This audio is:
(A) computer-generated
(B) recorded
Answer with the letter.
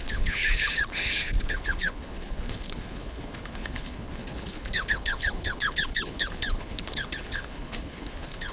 A